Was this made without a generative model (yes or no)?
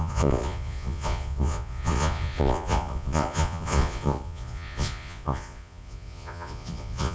no